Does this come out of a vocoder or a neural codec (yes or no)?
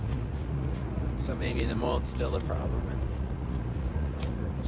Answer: yes